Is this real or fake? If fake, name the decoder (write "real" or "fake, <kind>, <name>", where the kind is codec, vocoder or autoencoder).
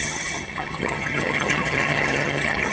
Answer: fake, vocoder, HiFi-GAN